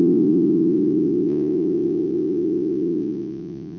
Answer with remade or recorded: remade